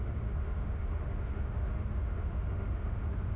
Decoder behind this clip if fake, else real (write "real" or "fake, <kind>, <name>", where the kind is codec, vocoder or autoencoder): fake, autoencoder, DAC-VAE